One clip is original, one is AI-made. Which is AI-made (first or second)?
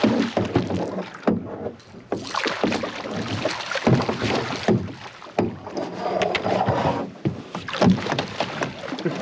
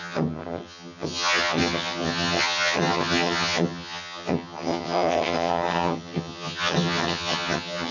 second